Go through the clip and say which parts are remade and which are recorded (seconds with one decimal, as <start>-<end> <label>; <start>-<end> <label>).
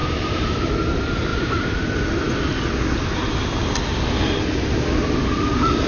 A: 0.0-0.7 remade; 0.7-1.3 recorded; 1.3-1.8 remade; 1.8-5.9 recorded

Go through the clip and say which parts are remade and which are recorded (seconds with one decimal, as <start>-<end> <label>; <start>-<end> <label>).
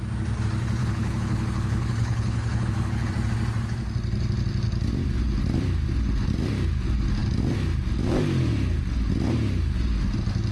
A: 0.0-0.8 recorded; 0.8-3.1 remade; 3.1-10.5 recorded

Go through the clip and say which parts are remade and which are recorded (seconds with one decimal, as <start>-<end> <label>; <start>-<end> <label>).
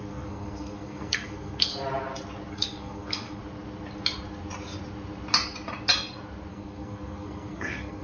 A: 0.0-1.7 remade; 1.7-2.5 recorded; 2.5-3.4 remade; 3.4-6.5 recorded; 6.5-8.0 remade